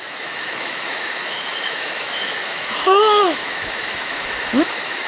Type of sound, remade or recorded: remade